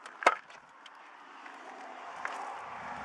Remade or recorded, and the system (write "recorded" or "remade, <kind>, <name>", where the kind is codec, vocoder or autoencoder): recorded